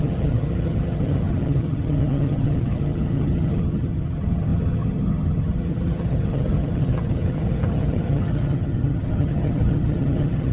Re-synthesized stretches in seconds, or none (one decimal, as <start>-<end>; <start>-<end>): 0.0-10.5